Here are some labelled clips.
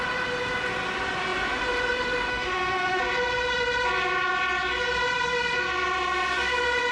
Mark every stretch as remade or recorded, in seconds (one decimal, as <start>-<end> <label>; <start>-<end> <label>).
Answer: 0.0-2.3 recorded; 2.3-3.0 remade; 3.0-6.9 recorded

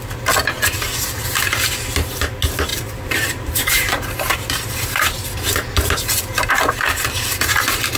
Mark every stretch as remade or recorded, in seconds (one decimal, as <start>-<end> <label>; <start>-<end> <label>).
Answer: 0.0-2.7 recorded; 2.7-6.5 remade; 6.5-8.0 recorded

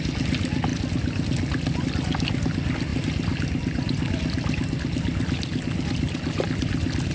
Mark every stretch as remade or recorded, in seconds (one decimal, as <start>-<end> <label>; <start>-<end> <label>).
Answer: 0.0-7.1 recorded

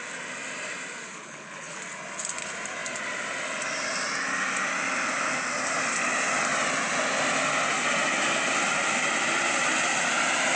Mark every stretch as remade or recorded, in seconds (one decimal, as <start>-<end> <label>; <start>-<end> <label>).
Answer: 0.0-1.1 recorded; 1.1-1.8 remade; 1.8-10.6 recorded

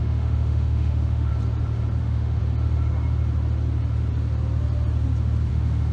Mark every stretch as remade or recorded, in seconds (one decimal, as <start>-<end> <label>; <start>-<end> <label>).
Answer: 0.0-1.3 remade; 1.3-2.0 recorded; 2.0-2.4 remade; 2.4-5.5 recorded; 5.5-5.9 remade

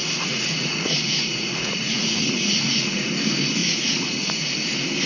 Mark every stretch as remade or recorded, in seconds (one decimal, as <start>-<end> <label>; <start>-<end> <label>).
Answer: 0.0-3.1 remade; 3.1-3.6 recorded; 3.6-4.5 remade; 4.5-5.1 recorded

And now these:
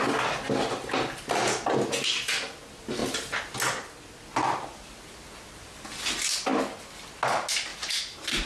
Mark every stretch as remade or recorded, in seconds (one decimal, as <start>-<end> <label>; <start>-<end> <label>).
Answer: 0.0-6.5 recorded; 6.5-7.1 remade; 7.1-7.7 recorded; 7.7-8.5 remade